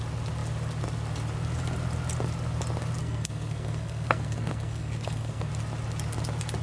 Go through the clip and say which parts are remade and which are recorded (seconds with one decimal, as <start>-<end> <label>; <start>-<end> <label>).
0.0-3.0 recorded; 3.0-5.5 remade; 5.5-6.6 recorded